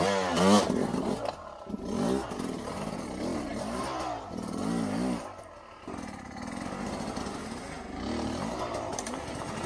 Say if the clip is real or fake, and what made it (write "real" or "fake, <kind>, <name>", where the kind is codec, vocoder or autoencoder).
real